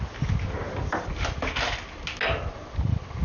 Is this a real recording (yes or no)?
yes